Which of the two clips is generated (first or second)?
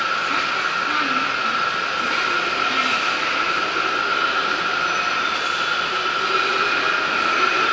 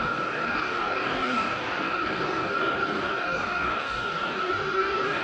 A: second